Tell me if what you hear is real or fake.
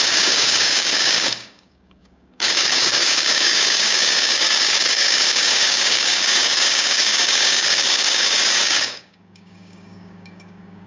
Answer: fake